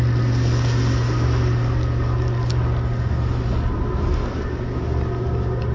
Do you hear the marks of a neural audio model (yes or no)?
no